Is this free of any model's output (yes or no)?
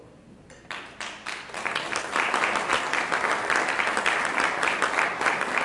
yes